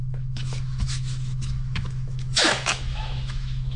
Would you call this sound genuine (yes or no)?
no